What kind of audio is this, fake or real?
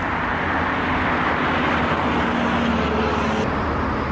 real